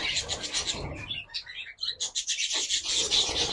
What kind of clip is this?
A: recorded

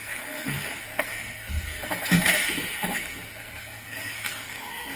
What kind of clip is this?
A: remade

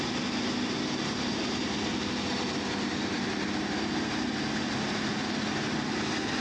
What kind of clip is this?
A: recorded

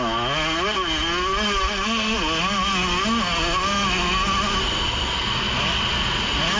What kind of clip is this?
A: recorded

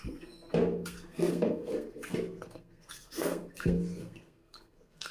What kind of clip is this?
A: remade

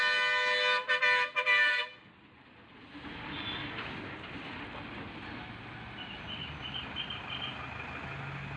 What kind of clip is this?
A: recorded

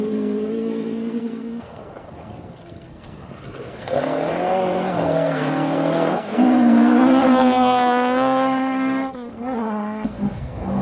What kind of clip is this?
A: remade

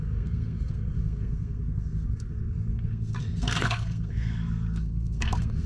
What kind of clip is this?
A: remade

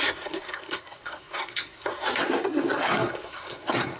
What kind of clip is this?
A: remade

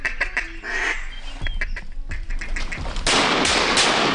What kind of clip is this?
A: recorded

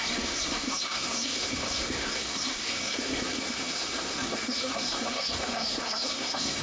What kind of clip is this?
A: remade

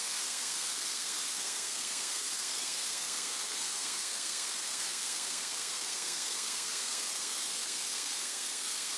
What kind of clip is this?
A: remade